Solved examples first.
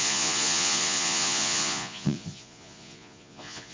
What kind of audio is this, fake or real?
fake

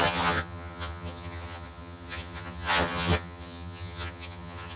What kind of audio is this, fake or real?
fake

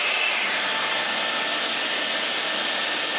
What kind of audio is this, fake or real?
real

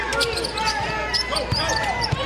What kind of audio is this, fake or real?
real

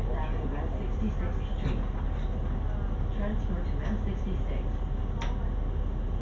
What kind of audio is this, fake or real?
real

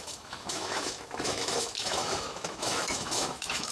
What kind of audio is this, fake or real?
fake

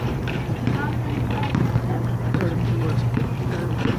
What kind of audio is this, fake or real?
fake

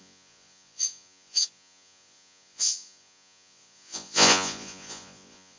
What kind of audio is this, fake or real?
fake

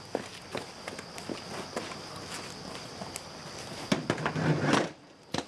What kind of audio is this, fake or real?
real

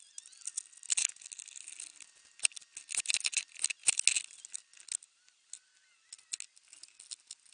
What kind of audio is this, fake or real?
real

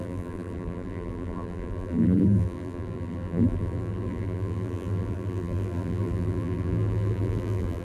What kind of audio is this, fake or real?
fake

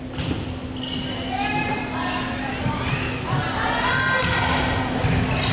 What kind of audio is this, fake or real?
real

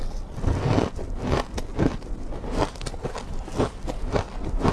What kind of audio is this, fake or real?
real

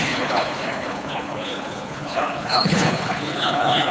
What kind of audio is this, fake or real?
fake